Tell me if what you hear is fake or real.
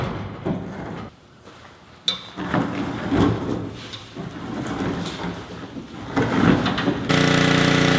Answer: real